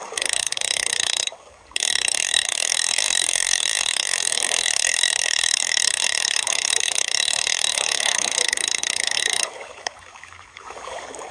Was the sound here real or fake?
fake